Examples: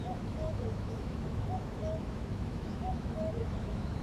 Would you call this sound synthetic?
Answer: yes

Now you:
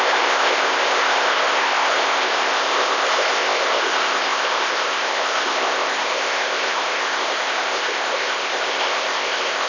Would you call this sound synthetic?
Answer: yes